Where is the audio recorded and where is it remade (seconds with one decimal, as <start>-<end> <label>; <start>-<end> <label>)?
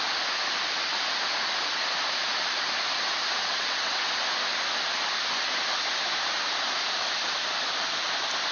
0.0-3.4 recorded; 3.4-4.1 remade; 4.1-8.5 recorded